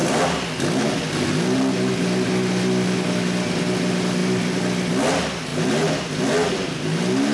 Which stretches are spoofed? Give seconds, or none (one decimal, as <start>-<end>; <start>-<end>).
none